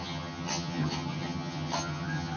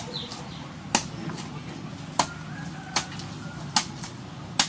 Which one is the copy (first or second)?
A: first